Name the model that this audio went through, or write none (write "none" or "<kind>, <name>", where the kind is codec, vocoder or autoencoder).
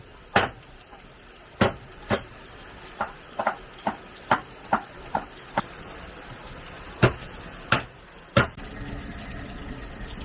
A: vocoder, BigVGAN v2